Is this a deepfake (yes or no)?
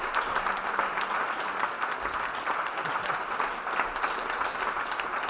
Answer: no